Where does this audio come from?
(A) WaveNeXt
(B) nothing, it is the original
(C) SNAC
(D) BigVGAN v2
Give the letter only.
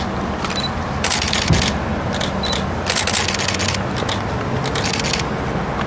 B